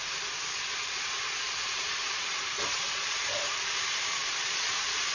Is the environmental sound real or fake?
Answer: fake